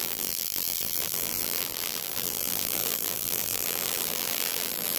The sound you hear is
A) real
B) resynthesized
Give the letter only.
B